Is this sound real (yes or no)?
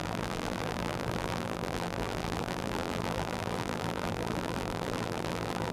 no